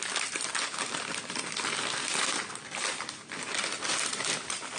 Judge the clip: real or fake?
real